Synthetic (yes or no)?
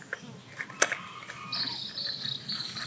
no